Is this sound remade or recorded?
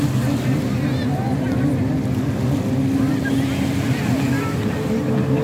recorded